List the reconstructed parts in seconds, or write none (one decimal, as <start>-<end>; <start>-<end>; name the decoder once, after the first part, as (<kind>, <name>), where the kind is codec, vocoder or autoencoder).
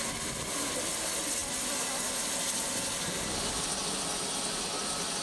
none